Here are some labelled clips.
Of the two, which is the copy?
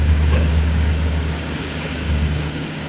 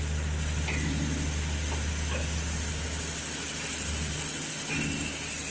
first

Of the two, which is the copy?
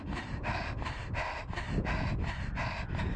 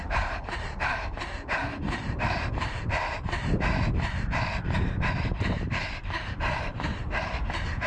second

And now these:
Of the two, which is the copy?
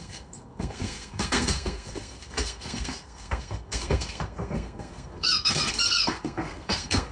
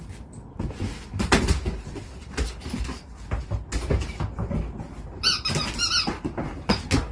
first